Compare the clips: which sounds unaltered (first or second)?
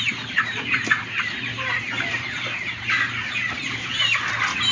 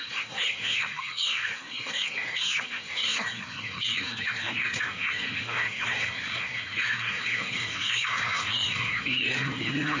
first